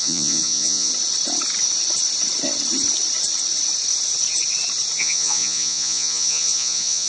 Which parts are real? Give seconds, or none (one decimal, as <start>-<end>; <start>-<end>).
0.9-5.0